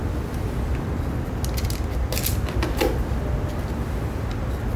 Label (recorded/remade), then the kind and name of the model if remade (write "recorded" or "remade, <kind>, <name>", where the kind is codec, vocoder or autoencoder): recorded